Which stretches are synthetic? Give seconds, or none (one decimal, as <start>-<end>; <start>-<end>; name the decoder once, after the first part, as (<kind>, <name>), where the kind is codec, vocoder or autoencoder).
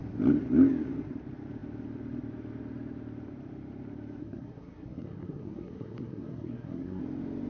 4.2-7.0 (codec, SNAC)